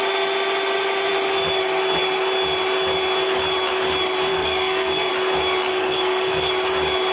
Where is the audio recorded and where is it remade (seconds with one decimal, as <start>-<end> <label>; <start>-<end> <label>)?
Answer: 0.0-4.3 recorded; 4.3-5.1 remade; 5.1-5.7 recorded; 5.7-6.5 remade; 6.5-7.1 recorded

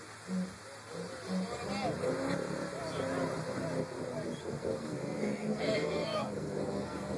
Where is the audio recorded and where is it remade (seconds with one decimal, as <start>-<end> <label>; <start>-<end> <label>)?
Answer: 0.0-4.4 recorded; 4.4-7.2 remade